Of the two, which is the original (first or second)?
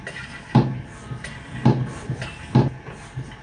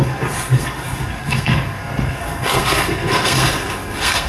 first